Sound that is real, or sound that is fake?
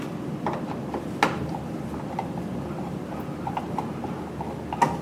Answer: real